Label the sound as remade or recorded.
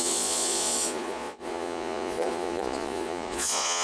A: remade